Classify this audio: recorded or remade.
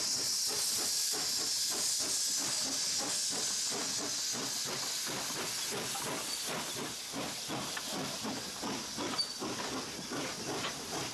recorded